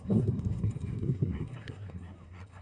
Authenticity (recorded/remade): remade